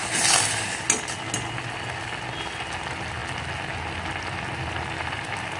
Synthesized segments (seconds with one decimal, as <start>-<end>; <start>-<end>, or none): none